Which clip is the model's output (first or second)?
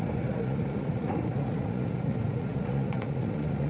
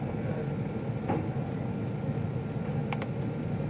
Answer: first